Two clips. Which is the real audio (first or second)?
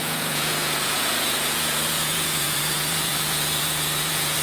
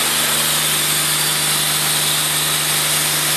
second